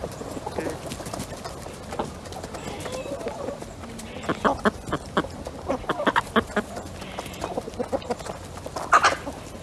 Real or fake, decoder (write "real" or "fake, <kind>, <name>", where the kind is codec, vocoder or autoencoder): real